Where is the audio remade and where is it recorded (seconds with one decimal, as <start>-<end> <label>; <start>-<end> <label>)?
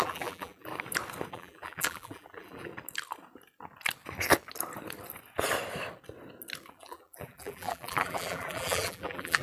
0.0-0.7 remade; 0.7-1.3 recorded; 1.3-2.7 remade; 2.7-6.7 recorded; 6.7-9.4 remade